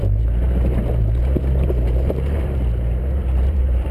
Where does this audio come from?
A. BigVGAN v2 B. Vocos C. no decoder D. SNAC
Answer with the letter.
A